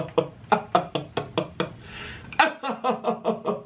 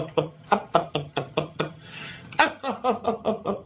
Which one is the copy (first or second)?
second